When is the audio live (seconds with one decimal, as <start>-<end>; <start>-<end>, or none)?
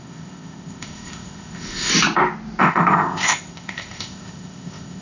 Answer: 1.9-2.6